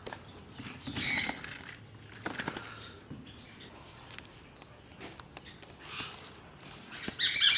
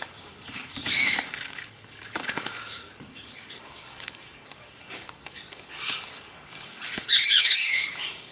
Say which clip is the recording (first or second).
first